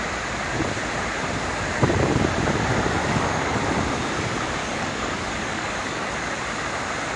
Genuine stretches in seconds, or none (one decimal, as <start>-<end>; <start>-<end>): 0.0-3.0; 3.6-4.6; 6.1-7.2